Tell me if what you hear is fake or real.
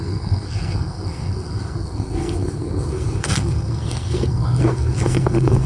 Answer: fake